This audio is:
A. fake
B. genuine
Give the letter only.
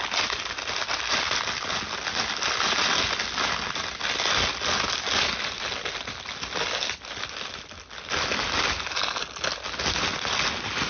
B